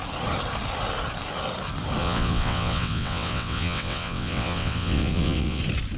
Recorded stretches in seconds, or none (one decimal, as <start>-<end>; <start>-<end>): 0.0-2.0; 5.6-6.0